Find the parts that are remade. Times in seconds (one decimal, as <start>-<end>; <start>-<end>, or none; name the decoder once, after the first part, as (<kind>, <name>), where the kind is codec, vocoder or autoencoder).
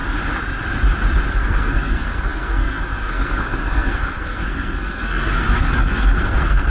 1.3-6.7 (codec, SNAC)